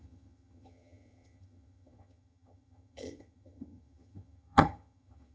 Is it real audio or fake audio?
fake